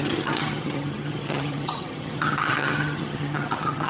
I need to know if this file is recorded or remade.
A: remade